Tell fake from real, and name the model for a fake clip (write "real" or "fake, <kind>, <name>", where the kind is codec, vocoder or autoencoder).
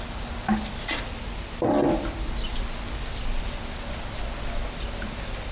real